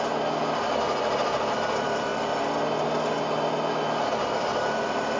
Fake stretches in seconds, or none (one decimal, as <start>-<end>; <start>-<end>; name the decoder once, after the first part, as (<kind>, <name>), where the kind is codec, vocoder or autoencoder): none